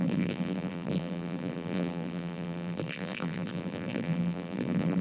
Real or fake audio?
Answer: fake